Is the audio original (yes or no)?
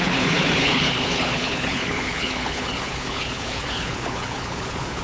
no